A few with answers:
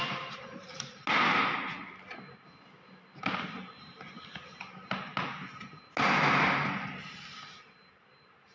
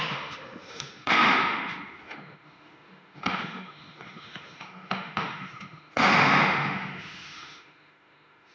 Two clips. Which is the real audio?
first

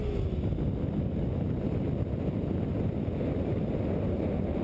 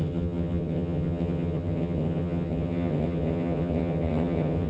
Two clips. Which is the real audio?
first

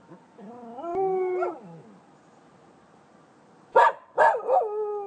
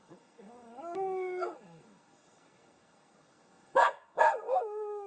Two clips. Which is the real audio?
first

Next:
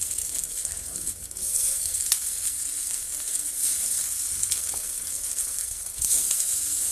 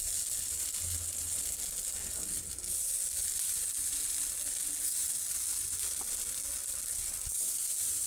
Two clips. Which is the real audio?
second